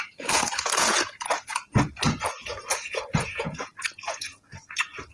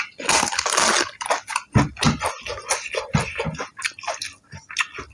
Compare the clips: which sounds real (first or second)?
second